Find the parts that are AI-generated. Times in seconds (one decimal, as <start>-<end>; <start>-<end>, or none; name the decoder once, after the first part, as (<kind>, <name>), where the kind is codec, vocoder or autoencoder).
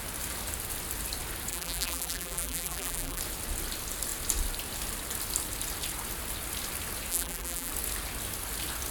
1.5-3.2 (vocoder, BigVGAN v2); 7.1-7.7